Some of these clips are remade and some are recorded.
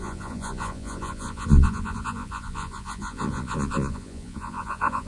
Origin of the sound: remade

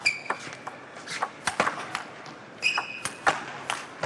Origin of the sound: recorded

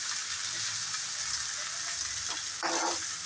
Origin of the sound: recorded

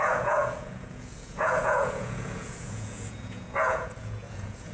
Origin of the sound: remade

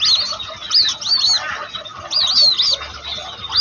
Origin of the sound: recorded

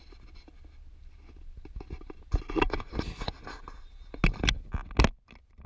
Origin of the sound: recorded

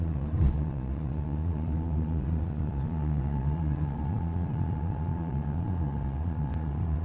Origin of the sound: remade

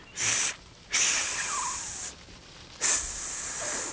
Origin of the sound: recorded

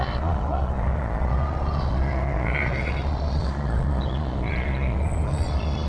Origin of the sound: remade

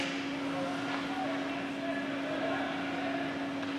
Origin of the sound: recorded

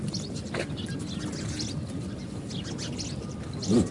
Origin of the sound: recorded